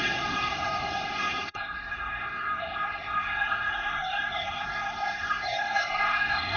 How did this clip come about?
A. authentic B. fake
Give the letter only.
B